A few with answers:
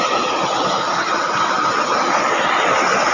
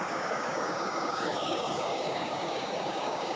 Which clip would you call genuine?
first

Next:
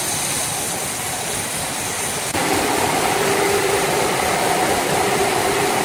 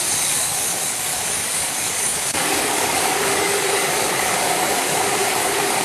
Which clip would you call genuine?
first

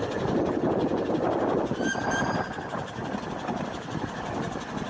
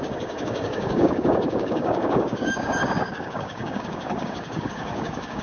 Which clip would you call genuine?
first